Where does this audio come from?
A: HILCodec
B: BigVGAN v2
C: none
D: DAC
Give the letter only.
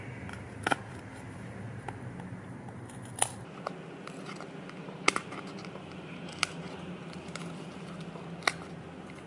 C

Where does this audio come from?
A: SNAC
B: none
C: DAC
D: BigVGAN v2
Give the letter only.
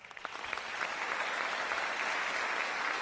B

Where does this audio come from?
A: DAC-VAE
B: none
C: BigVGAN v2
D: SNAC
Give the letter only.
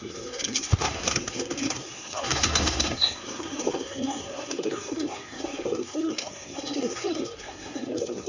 D